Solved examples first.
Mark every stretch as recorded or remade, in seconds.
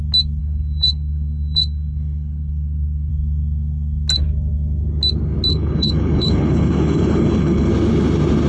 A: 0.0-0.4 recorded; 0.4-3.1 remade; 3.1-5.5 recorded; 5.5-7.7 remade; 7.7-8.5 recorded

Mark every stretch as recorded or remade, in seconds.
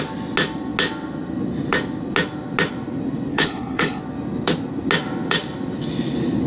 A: 0.0-3.3 recorded; 3.3-4.0 remade; 4.0-6.5 recorded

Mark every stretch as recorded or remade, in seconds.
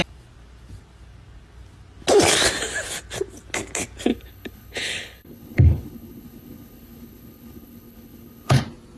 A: 0.0-4.1 recorded; 4.1-8.6 remade; 8.6-9.0 recorded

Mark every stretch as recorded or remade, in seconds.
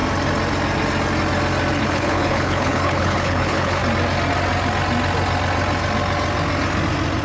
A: 0.0-1.8 recorded; 1.8-3.8 remade; 3.8-7.2 recorded